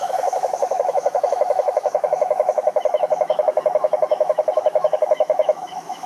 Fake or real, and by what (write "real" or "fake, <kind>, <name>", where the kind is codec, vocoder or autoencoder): fake, autoencoder, DAC-VAE